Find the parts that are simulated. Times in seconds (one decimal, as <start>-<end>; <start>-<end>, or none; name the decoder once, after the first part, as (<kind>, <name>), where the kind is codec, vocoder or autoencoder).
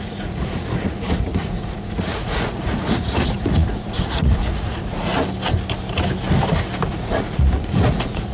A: 0.0-5.1 (vocoder, Vocos); 6.9-8.3